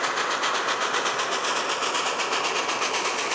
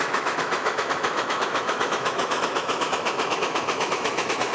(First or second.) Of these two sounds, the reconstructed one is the second